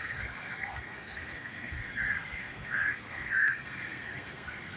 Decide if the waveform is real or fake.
fake